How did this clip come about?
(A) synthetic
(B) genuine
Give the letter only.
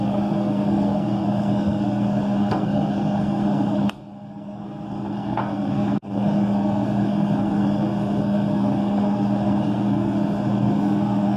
A